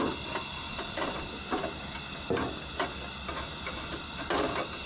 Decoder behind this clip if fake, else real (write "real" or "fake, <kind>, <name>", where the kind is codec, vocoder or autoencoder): real